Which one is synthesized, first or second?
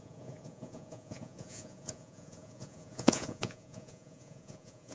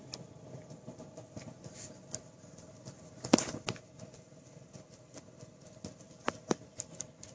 first